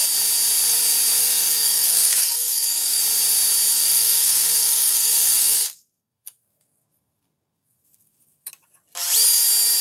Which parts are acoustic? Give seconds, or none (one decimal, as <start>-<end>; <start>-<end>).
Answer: 0.0-1.2; 3.0-3.8; 8.5-9.8